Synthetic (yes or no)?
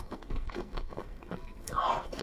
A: yes